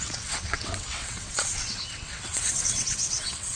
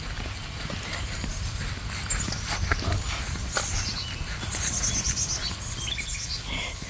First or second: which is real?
second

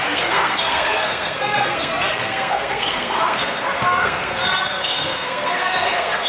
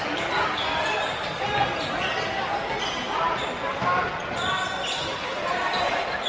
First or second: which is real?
second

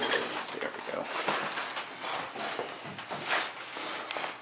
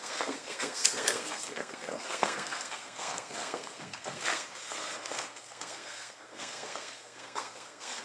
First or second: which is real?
first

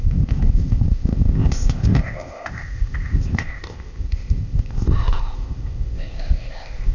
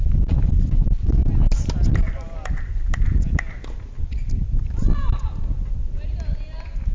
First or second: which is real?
second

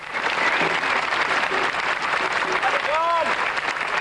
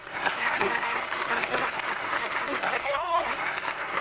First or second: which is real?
first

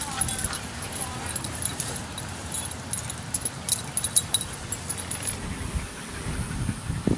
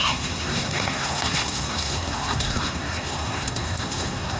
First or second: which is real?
first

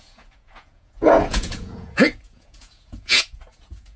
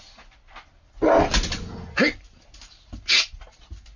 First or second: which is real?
second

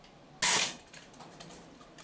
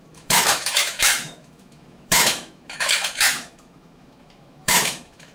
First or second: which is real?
first